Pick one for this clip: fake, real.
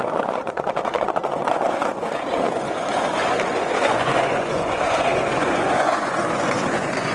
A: fake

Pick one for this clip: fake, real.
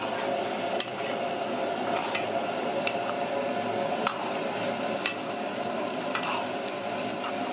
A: real